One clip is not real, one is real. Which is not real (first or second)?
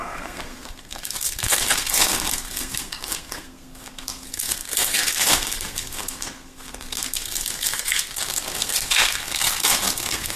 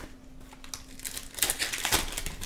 first